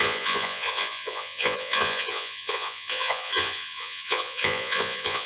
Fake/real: fake